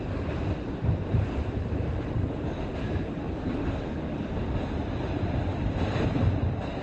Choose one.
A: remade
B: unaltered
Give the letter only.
A